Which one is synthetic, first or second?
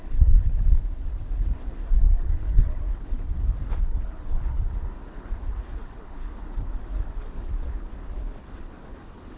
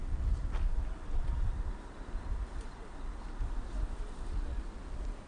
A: first